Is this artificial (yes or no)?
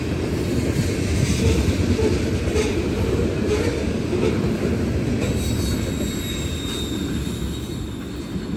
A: no